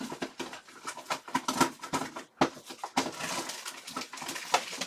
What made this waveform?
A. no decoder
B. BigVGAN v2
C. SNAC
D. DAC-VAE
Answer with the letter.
A